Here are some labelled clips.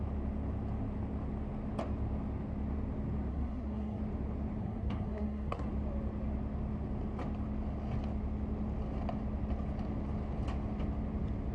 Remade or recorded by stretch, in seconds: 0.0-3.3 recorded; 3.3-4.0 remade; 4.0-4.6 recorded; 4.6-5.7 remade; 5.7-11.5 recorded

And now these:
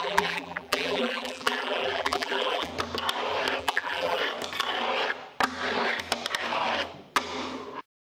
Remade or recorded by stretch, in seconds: 0.0-2.7 remade; 2.7-3.6 recorded; 3.6-4.2 remade; 4.2-8.1 recorded

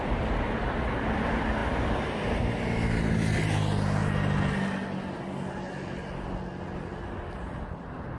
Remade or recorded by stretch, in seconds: 0.0-8.2 recorded